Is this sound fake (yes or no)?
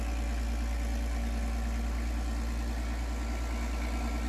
no